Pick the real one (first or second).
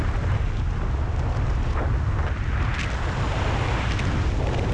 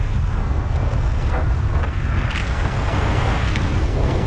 first